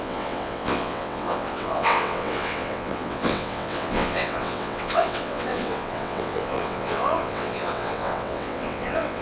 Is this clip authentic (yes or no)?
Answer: no